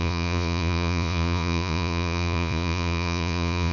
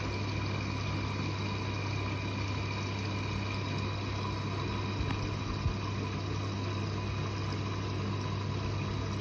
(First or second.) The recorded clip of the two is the second